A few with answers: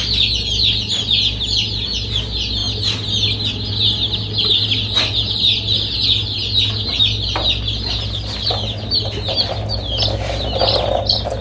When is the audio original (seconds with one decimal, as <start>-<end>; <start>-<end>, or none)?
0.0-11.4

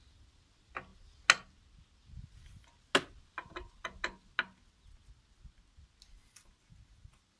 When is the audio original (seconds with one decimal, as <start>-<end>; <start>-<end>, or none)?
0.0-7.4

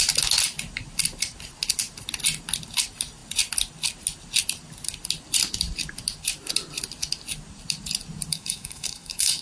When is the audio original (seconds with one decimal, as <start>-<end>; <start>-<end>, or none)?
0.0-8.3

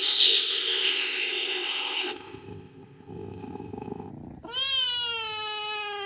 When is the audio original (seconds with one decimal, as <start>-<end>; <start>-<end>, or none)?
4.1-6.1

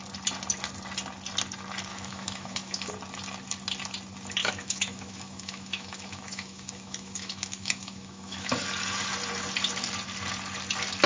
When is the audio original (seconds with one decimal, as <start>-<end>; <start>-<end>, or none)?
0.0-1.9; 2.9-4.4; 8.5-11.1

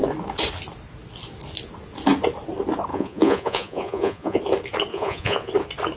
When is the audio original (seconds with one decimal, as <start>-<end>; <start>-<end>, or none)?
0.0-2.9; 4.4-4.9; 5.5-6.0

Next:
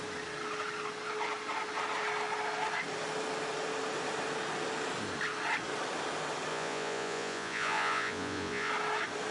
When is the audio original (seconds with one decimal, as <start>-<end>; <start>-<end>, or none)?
0.0-6.5; 8.7-9.3

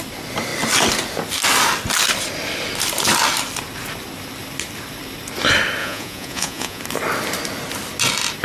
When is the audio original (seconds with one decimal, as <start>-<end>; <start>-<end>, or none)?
0.0-5.8; 6.8-8.4